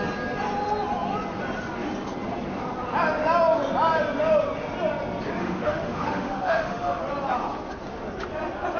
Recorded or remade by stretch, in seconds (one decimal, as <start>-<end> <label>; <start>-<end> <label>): 0.0-5.4 recorded; 5.4-7.0 remade; 7.0-8.8 recorded